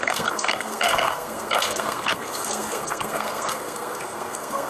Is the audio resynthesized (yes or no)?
yes